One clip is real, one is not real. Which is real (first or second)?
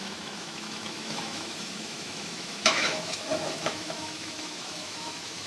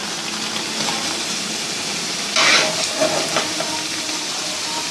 second